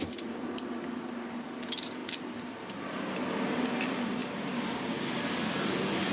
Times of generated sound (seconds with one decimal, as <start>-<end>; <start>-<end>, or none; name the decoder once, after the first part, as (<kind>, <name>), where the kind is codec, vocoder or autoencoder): none